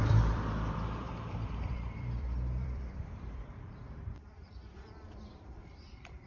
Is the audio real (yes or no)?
no